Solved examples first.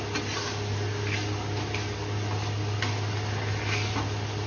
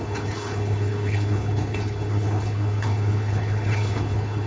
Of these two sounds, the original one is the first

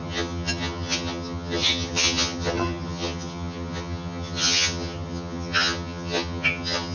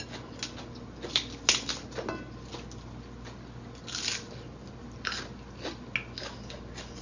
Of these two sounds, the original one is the second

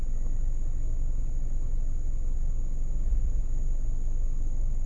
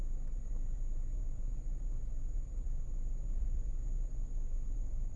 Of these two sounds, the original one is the first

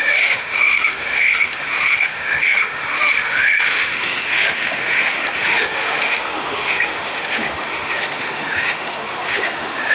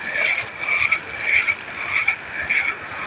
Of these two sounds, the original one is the second